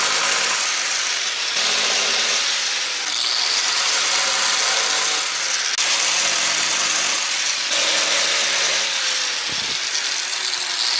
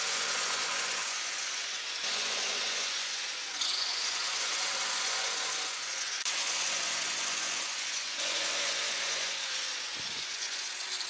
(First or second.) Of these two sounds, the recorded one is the first